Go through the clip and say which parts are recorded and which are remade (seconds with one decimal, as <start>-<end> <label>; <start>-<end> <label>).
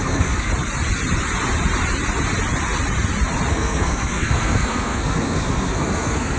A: 0.0-0.5 remade; 0.5-3.5 recorded; 3.5-6.4 remade